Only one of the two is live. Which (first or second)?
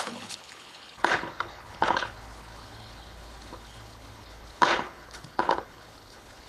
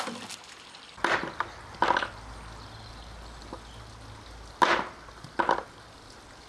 second